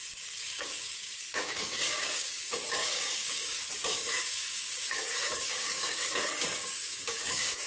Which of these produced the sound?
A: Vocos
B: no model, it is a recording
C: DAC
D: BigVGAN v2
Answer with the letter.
C